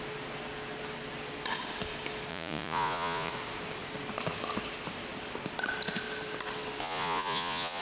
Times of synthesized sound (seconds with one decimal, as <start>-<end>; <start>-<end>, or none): 2.3-3.3; 6.8-7.8